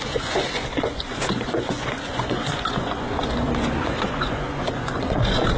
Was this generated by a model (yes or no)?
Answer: yes